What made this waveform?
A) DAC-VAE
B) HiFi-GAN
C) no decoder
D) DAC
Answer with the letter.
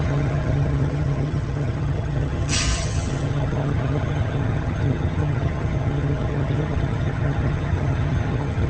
B